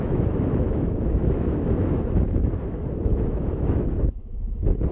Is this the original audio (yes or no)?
no